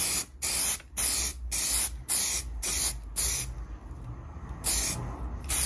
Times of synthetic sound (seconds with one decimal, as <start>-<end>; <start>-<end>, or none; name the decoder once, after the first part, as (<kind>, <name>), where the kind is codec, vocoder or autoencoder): none